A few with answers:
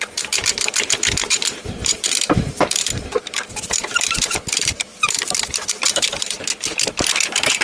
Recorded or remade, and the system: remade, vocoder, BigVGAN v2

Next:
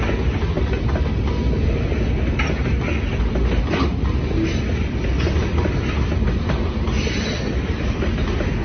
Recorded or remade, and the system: recorded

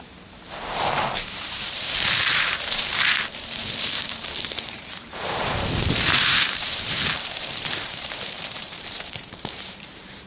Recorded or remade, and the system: remade, vocoder, BigVGAN v2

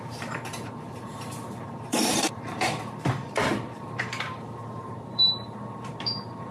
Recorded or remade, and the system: remade, vocoder, BigVGAN v2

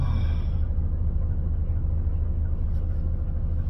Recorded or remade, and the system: recorded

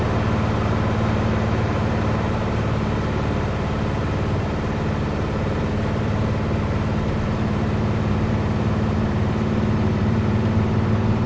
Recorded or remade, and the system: remade, vocoder, BigVGAN v2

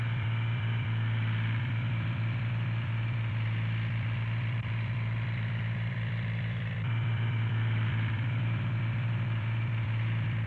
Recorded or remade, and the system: remade, vocoder, BigVGAN v2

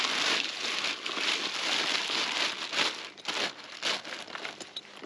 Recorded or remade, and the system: recorded